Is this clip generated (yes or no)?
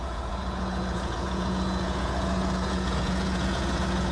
yes